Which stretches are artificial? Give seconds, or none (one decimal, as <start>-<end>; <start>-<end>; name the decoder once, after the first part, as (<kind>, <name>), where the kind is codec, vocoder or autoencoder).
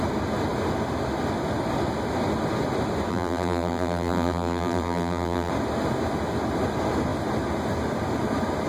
3.1-5.5 (vocoder, BigVGAN v2)